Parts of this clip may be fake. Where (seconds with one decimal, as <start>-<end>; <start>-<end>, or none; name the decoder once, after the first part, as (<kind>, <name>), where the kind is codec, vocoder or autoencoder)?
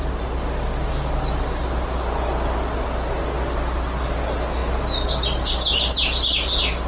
none